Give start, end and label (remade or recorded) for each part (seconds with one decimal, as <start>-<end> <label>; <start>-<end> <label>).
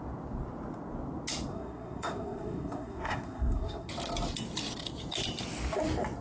0.0-1.5 recorded; 1.5-3.9 remade; 3.9-6.2 recorded